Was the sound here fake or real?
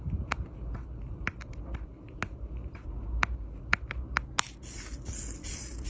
real